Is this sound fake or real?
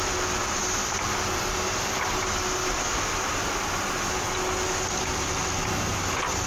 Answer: real